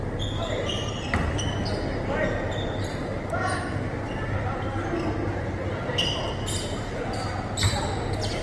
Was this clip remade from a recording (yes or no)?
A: no